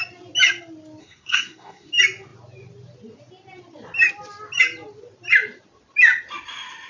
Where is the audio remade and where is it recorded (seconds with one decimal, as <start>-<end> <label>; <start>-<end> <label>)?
0.0-1.0 recorded; 1.0-1.9 remade; 1.9-6.9 recorded